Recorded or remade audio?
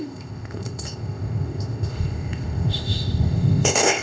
remade